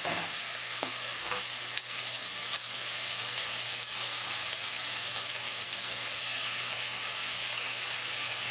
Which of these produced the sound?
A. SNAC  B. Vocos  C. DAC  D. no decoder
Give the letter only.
A